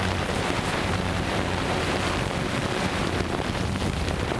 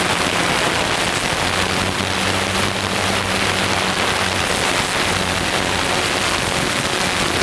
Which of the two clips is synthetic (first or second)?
first